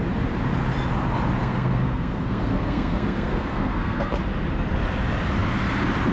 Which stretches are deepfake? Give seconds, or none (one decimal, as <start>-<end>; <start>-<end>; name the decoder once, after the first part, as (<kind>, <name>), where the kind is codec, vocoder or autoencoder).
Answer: 1.4-4.1 (codec, SNAC)